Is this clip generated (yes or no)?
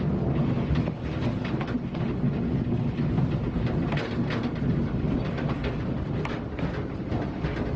no